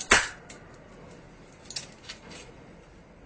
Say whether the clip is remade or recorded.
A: recorded